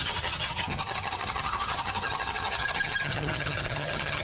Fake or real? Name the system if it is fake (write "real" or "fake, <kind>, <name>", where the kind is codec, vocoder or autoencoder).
fake, vocoder, HiFi-GAN